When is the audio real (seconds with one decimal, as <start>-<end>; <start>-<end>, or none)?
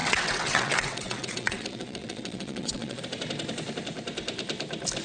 3.0-5.0